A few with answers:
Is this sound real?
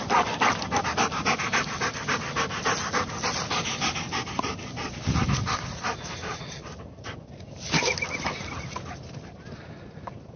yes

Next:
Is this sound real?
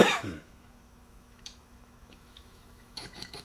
no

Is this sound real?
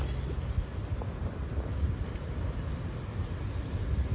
yes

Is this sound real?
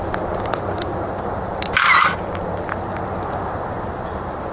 yes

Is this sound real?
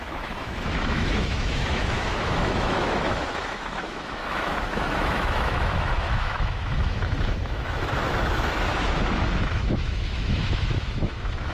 no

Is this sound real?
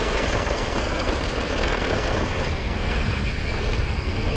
no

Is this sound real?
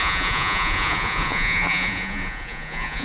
no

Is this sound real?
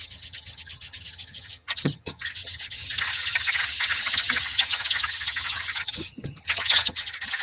no